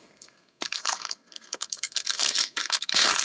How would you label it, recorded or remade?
remade